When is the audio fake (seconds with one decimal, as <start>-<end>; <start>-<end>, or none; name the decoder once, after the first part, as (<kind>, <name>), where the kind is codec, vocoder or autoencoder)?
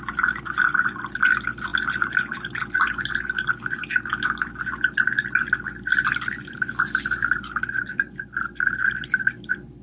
none